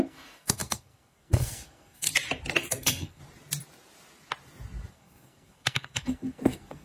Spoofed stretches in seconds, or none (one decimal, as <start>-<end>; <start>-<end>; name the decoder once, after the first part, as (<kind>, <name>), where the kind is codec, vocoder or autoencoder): 0.0-2.1 (codec, SNAC); 2.7-3.2; 4.9-6.8